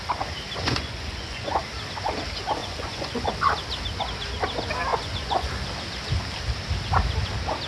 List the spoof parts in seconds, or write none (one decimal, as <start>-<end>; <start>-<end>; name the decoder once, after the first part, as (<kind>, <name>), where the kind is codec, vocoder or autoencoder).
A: 0.6-1.6 (vocoder, Vocos); 2.6-3.3; 4.9-5.5